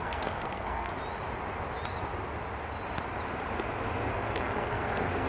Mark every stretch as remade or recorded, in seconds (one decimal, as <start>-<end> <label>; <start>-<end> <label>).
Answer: 0.0-0.9 remade; 0.9-4.1 recorded; 4.1-5.3 remade